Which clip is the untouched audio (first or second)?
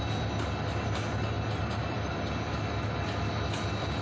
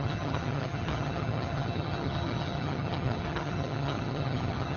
first